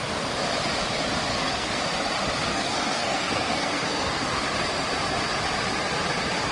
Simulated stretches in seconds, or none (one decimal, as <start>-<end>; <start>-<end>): 1.3-1.8; 2.5-4.2